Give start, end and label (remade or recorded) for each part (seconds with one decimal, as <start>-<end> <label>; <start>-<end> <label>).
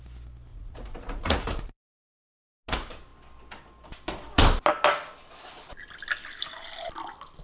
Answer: 0.0-0.5 recorded; 0.5-2.2 remade; 2.2-7.4 recorded